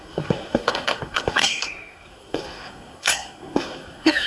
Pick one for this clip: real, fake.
fake